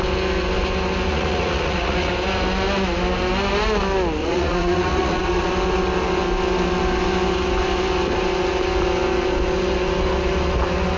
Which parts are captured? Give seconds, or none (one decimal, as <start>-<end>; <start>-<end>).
0.0-1.1; 2.1-4.2; 5.5-11.0